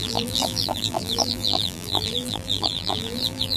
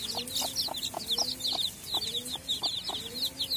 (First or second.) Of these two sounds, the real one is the second